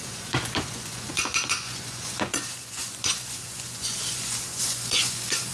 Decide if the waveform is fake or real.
fake